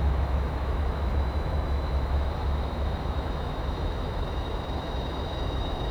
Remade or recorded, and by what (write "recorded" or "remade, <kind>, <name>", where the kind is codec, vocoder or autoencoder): remade, autoencoder, DAC-VAE